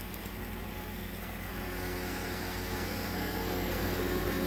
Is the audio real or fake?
fake